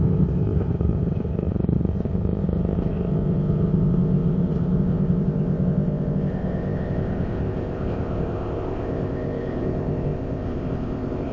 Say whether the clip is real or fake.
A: fake